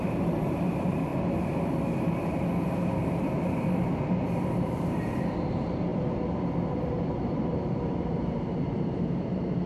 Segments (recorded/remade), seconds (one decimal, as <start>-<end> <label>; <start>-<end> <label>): 0.0-1.1 remade; 1.1-4.3 recorded; 4.3-5.9 remade; 5.9-6.8 recorded; 6.8-9.7 remade